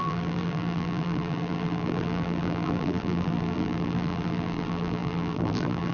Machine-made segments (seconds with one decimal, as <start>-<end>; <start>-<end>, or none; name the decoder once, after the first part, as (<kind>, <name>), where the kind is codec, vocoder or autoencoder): 0.0-5.9 (vocoder, BigVGAN v2)